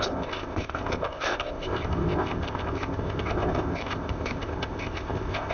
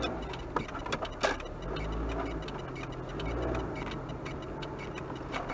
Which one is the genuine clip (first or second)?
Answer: second